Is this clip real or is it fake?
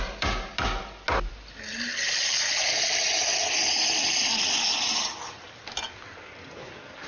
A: real